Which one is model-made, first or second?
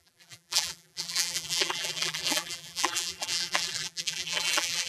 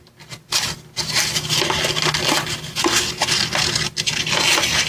first